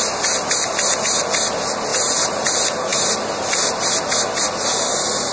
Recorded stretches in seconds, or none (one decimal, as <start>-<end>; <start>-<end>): 0.0-1.9; 2.5-5.3